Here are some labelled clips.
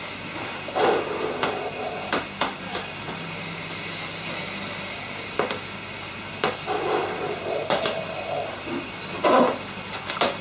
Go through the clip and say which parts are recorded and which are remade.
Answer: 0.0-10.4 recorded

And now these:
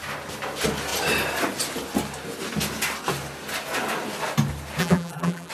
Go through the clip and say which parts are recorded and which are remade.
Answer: 0.0-4.8 recorded; 4.8-5.5 remade

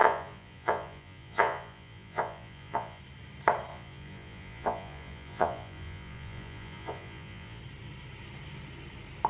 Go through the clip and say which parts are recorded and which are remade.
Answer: 0.0-3.0 remade; 3.0-3.7 recorded; 3.7-7.6 remade; 7.6-9.3 recorded

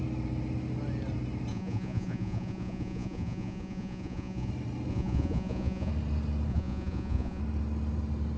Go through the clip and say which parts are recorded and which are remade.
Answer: 0.0-1.5 recorded; 1.5-4.5 remade; 4.5-4.9 recorded; 4.9-5.9 remade; 5.9-6.5 recorded; 6.5-7.4 remade; 7.4-8.4 recorded

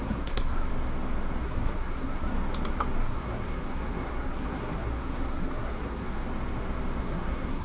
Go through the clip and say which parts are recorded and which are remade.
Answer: 0.0-0.7 remade; 0.7-1.4 recorded; 1.4-2.3 remade; 2.3-3.0 recorded; 3.0-6.2 remade; 6.2-7.0 recorded; 7.0-7.6 remade

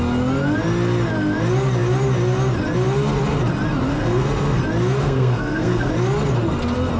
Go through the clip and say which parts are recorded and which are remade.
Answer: 0.0-3.9 recorded; 3.9-4.6 remade; 4.6-5.0 recorded; 5.0-5.9 remade; 5.9-7.0 recorded

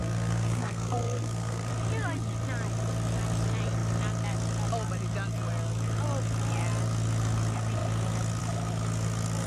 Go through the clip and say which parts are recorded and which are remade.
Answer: 0.0-1.7 remade; 1.7-9.5 recorded